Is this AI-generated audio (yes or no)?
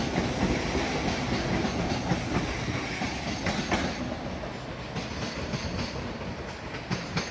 no